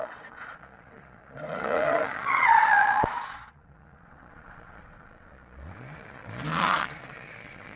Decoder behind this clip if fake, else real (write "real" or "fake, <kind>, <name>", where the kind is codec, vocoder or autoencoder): fake, vocoder, Vocos